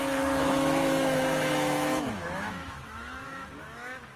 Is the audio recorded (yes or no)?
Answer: no